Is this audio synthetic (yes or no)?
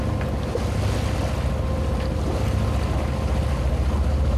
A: no